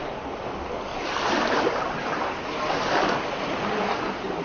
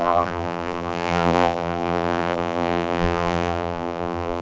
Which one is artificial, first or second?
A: second